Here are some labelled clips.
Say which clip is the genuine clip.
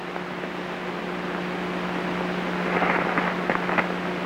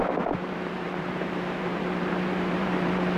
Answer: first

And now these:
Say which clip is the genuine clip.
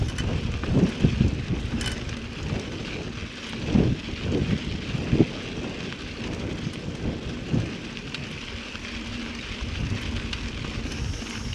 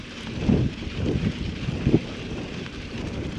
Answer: first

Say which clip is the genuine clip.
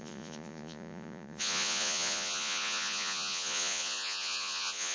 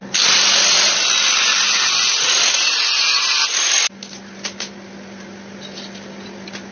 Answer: second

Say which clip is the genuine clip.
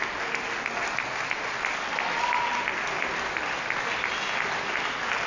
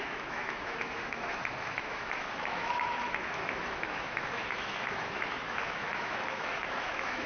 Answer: first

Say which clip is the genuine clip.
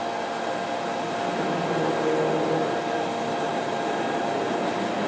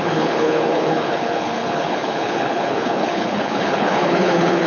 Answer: first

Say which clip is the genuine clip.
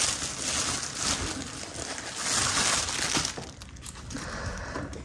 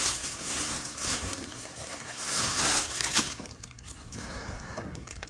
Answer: first